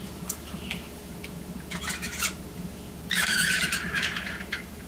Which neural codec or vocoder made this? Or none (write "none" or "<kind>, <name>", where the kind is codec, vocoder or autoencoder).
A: autoencoder, DAC-VAE